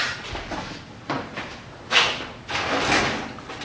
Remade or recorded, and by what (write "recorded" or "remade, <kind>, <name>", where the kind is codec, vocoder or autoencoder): recorded